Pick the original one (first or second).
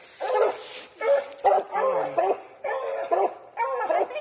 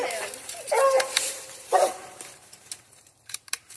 first